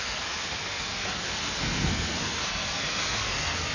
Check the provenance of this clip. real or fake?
fake